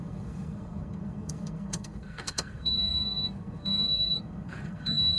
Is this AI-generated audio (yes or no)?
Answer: yes